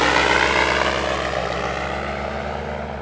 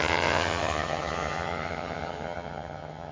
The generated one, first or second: second